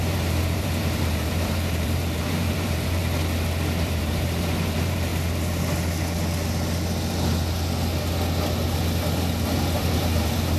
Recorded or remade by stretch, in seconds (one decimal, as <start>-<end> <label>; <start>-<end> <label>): 0.0-3.0 remade; 3.0-3.8 recorded; 3.8-5.1 remade; 5.1-9.9 recorded; 9.9-10.6 remade